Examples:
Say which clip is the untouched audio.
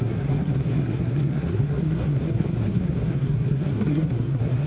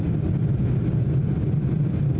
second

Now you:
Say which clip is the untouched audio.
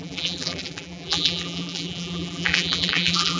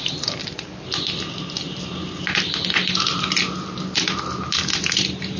second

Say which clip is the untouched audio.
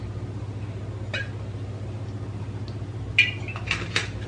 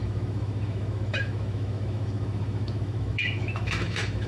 first